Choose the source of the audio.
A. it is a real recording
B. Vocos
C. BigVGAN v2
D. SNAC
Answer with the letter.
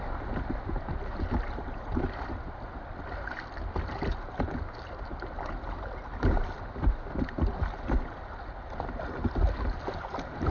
A